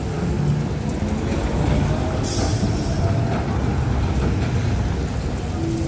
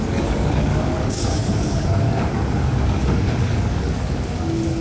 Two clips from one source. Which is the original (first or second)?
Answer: first